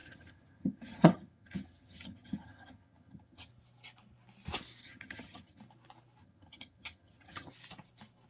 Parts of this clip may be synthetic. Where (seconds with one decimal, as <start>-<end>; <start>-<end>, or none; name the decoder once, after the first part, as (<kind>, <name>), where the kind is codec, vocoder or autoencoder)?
0.0-3.5 (vocoder, HiFi-GAN); 4.8-5.6; 6.2-7.5

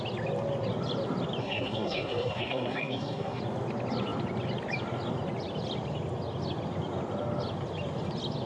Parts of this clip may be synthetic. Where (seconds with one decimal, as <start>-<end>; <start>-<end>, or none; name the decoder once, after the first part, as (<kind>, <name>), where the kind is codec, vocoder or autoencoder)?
1.4-3.4 (codec, SNAC)

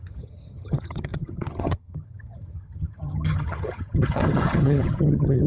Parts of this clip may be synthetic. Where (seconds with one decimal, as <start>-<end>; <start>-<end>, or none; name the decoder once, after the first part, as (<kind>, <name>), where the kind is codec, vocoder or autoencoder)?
0.0-5.5 (vocoder, HiFi-GAN)

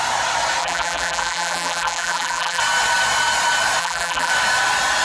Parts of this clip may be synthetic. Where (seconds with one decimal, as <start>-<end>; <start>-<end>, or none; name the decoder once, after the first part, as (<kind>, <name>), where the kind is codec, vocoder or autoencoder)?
0.6-2.6 (vocoder, BigVGAN v2); 3.8-4.3

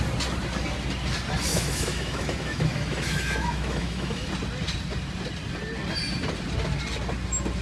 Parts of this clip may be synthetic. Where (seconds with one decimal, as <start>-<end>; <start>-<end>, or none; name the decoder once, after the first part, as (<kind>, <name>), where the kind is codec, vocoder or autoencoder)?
1.5-4.3 (autoencoder, DAC-VAE)

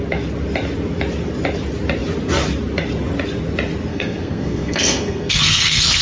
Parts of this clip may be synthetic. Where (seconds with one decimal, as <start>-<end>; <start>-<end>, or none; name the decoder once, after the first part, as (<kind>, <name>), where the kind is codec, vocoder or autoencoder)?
3.9-6.0 (codec, SNAC)

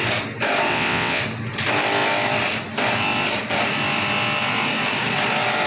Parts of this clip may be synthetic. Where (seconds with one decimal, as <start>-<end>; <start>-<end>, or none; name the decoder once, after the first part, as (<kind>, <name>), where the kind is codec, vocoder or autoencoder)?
0.7-1.2 (vocoder, WaveNeXt)

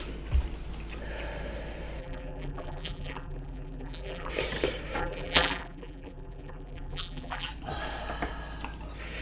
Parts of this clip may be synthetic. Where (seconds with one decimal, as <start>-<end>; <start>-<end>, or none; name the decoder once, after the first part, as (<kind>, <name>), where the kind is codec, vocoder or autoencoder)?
2.0-4.3 (vocoder, BigVGAN v2); 5.0-7.5